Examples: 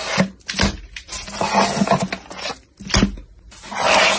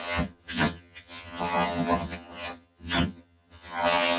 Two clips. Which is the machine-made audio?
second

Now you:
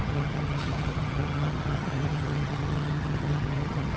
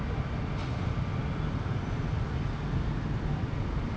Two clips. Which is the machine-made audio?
first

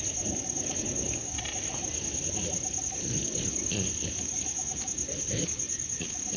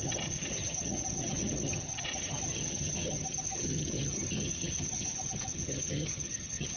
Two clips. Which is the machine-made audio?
second